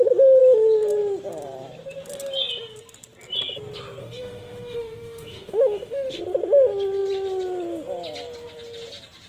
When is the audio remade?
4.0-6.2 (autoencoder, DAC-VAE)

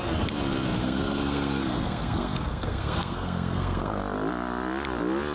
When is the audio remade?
0.8-4.0 (codec, SNAC)

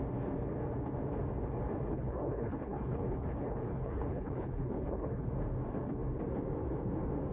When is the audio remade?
1.9-5.3 (codec, HILCodec)

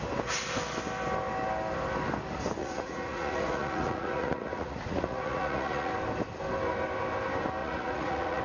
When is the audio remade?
2.6-5.9 (vocoder, Vocos); 7.6-8.4